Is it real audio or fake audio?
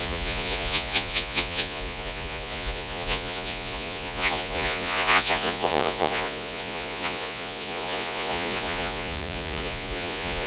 fake